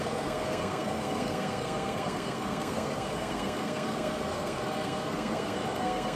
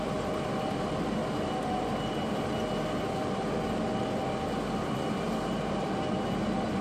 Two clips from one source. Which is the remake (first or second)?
first